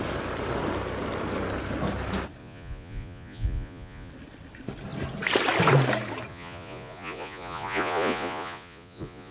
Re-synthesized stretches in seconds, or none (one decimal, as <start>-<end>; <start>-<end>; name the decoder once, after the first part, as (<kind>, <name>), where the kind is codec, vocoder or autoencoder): 2.4-4.1 (vocoder, Vocos); 6.3-9.3